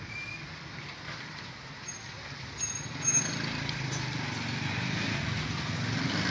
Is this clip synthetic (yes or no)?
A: no